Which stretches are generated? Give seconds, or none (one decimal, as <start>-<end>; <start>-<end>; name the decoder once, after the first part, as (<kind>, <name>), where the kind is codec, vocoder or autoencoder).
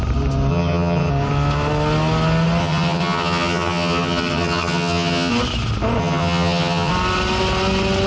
0.5-1.1 (vocoder, HiFi-GAN); 2.6-5.3; 6.0-6.9